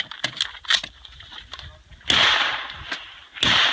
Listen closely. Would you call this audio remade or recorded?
recorded